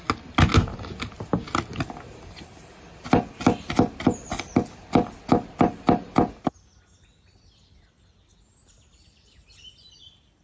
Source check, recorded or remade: recorded